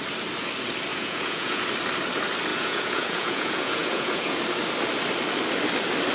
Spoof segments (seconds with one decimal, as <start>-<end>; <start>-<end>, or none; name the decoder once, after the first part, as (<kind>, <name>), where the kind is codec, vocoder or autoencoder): 0.9-1.6 (vocoder, Vocos); 2.5-4.4